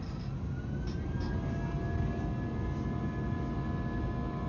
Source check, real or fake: real